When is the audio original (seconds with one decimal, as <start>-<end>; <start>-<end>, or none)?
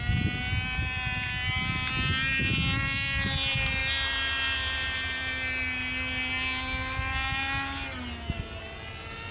0.0-9.3